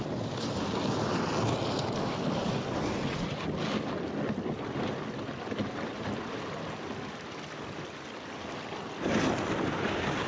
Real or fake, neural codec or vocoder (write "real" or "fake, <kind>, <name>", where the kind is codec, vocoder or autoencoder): real